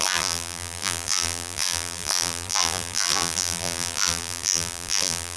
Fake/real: fake